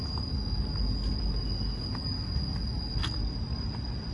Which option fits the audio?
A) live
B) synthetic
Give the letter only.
A